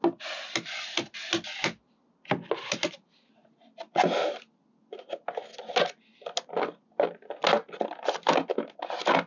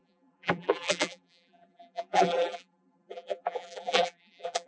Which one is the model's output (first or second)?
second